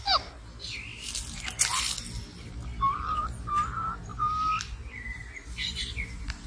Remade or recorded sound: recorded